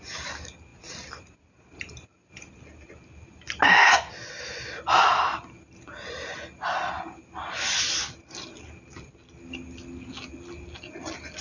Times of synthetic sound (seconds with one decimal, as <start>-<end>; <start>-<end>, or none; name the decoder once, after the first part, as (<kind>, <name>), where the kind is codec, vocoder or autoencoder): none